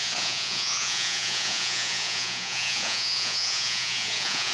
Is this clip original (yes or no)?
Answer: no